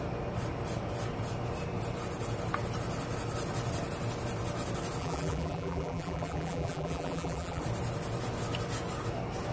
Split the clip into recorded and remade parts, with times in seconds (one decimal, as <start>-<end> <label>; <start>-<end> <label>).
0.0-5.0 recorded; 5.0-7.6 remade; 7.6-9.5 recorded